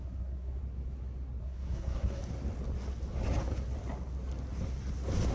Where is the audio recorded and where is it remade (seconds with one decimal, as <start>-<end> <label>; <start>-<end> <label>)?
0.0-0.6 remade; 0.6-1.4 recorded; 1.4-2.2 remade; 2.2-5.3 recorded